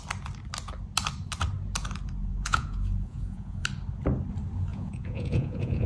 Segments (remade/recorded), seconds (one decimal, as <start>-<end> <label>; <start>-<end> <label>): 0.0-2.2 recorded; 2.2-3.6 remade; 3.6-4.7 recorded; 4.7-5.9 remade